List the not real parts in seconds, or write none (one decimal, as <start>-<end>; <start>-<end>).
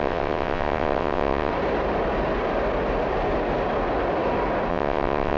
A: 0.0-1.5; 4.7-5.4